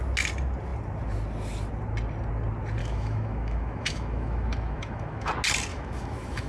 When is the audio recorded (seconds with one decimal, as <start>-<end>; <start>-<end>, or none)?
0.0-2.8; 5.3-5.7